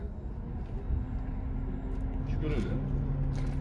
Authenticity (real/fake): real